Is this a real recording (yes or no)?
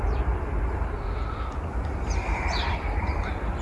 no